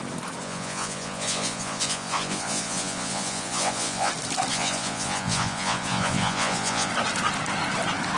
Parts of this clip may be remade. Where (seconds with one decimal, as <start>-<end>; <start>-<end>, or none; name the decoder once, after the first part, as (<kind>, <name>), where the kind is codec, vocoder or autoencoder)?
0.4-4.1 (vocoder, Vocos); 4.5-6.9